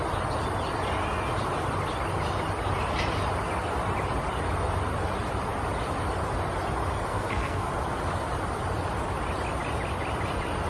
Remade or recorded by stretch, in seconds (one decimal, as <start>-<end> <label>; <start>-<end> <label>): 0.0-7.1 recorded; 7.1-7.7 remade; 7.7-10.7 recorded